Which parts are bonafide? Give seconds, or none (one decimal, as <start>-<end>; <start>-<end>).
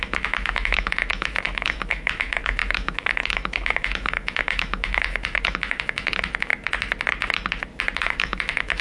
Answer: 6.5-8.0